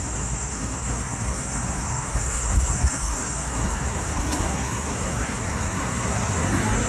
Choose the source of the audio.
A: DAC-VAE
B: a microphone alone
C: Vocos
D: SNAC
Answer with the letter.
D